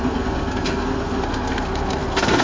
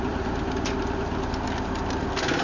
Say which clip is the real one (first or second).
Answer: second